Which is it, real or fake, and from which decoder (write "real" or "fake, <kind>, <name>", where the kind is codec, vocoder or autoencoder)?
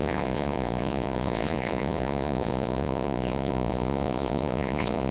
fake, vocoder, Vocos